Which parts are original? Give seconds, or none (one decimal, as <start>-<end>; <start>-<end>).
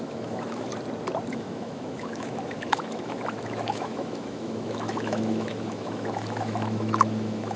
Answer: 0.7-1.3